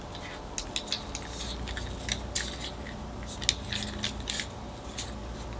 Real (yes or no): yes